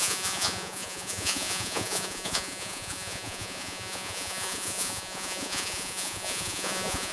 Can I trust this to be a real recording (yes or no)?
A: no